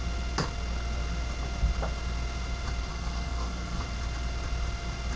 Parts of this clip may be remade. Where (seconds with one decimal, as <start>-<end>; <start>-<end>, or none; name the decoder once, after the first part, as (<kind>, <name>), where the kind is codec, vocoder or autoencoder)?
2.9-3.8 (codec, SNAC)